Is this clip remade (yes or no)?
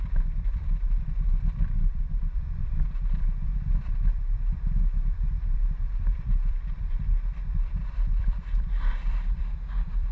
yes